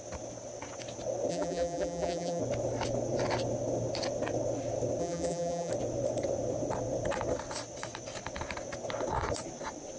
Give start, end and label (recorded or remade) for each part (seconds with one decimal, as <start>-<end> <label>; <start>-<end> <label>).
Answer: 0.0-1.3 recorded; 1.3-2.4 remade; 2.4-5.0 recorded; 5.0-5.7 remade; 5.7-10.0 recorded

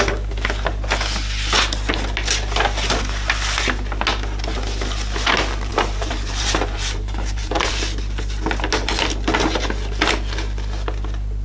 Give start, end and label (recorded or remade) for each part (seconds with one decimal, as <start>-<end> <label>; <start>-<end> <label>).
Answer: 0.0-5.7 recorded; 5.7-7.7 remade; 7.7-11.4 recorded

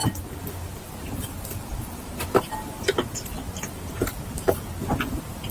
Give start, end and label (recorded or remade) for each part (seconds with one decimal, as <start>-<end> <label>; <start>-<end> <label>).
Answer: 0.0-5.5 recorded

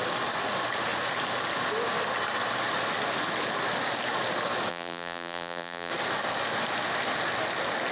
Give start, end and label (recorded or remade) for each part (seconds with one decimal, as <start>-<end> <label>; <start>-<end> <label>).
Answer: 0.0-4.7 recorded; 4.7-5.9 remade; 5.9-7.9 recorded

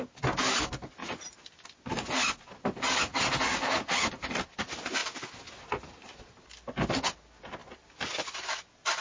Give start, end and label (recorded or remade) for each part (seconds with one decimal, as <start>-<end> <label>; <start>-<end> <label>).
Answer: 0.0-7.6 recorded; 7.6-9.0 remade

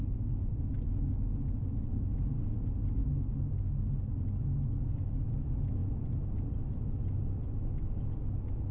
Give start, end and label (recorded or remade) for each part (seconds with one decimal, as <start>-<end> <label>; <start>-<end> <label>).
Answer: 0.0-8.7 recorded